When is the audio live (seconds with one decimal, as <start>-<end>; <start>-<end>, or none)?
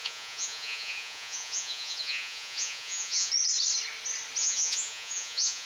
3.3-4.4